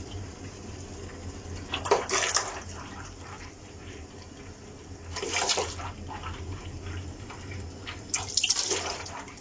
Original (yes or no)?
no